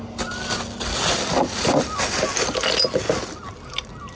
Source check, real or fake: real